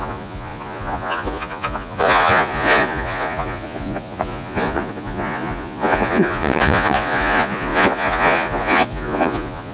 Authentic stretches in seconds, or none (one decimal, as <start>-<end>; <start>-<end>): none

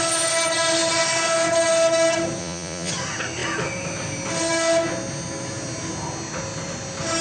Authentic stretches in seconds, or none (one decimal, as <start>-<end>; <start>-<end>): 0.0-2.4; 2.9-7.2

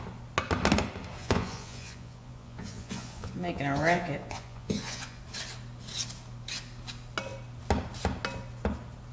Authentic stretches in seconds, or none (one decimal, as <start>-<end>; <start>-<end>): 0.0-1.2; 5.2-9.1